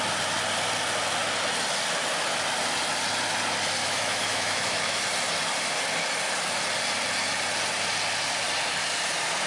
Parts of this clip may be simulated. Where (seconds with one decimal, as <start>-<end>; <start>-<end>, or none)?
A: 3.8-5.0

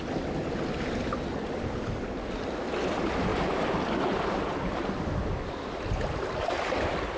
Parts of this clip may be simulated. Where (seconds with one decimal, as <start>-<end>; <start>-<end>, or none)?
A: none

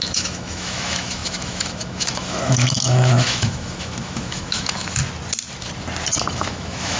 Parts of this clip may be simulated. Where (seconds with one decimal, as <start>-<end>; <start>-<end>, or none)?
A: 0.0-5.0; 6.3-7.0